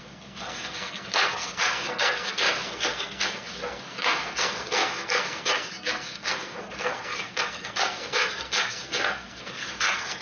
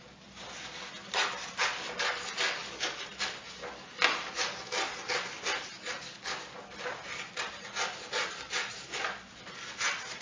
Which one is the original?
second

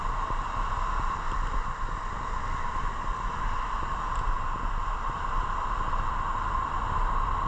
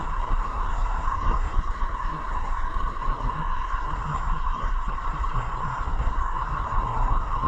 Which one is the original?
first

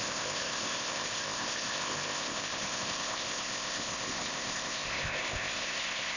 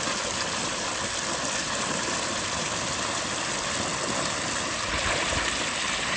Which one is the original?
second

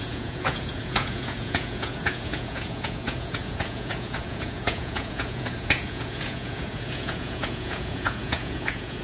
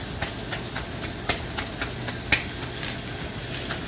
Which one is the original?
second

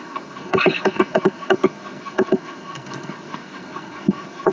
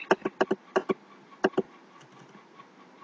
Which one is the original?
second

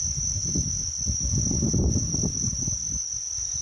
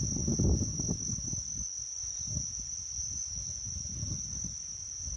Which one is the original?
second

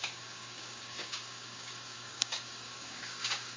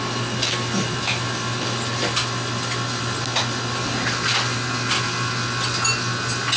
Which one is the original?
second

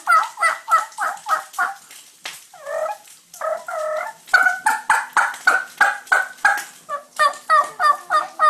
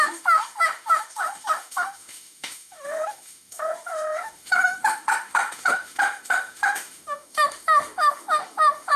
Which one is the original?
first